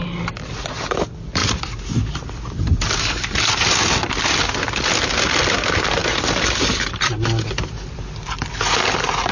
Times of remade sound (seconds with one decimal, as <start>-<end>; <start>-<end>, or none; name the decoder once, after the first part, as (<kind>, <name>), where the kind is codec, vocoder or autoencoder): none